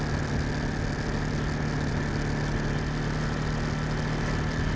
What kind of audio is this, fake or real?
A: real